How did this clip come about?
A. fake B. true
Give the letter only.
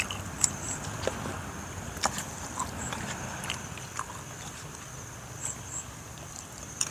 A